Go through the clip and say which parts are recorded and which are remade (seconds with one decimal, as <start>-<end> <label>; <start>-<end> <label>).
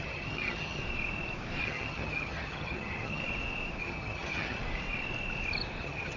0.0-0.8 remade; 0.8-1.6 recorded; 1.6-3.2 remade; 3.2-3.8 recorded; 3.8-4.6 remade; 4.6-5.8 recorded; 5.8-6.2 remade